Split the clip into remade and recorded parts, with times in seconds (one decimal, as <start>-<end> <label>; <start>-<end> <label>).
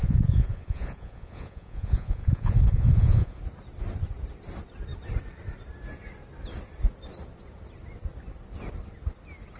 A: 0.0-3.4 remade; 3.4-9.6 recorded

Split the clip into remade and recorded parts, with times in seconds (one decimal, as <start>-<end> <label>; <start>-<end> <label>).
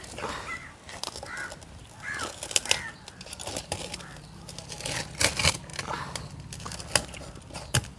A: 0.0-8.0 recorded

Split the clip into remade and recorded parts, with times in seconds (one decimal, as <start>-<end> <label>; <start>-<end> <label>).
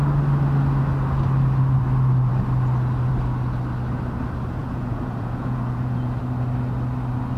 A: 0.0-4.6 recorded; 4.6-6.2 remade; 6.2-7.4 recorded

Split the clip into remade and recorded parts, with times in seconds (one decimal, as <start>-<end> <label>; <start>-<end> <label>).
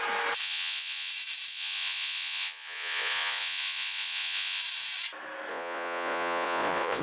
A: 0.0-0.4 recorded; 0.4-1.1 remade; 1.1-1.5 recorded; 1.5-4.6 remade; 4.6-5.5 recorded; 5.5-7.0 remade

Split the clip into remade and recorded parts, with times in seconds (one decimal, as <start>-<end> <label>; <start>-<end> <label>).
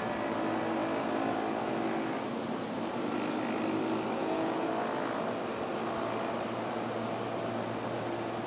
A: 0.0-4.2 recorded; 4.2-4.7 remade; 4.7-8.5 recorded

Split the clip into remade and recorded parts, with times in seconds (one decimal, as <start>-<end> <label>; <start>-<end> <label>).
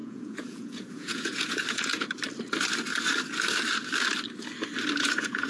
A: 0.0-1.9 remade; 1.9-5.0 recorded; 5.0-5.5 remade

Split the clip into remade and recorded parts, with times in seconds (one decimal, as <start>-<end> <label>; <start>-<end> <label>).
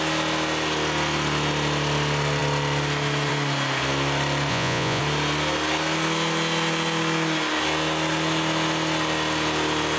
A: 0.0-4.5 recorded; 4.5-5.0 remade; 5.0-10.0 recorded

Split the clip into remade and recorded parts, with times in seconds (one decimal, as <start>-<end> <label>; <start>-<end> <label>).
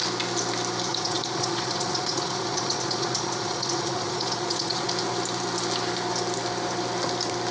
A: 0.0-0.9 recorded; 0.9-4.9 remade; 4.9-7.5 recorded